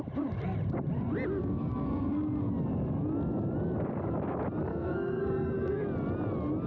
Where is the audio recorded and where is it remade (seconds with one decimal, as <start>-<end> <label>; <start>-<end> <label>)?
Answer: 0.0-1.4 recorded; 1.4-2.5 remade; 2.5-4.7 recorded; 4.7-5.8 remade; 5.8-6.7 recorded